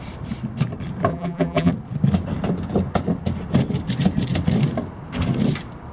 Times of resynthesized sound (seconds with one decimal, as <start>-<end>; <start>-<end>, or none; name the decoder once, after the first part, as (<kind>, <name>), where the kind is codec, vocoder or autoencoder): 1.1-1.7 (vocoder, BigVGAN v2)